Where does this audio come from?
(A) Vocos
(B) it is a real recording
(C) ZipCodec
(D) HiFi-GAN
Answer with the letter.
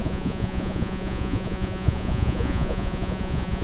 A